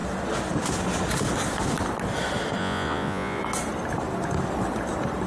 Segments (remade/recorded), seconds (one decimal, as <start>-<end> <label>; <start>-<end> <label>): 0.0-2.6 recorded; 2.6-3.4 remade; 3.4-5.3 recorded